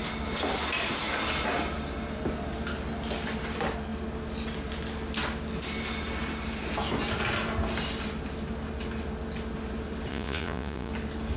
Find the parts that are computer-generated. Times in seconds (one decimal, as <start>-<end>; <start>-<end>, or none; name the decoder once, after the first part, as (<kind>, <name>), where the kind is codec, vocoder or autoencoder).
10.1-10.9 (vocoder, Vocos)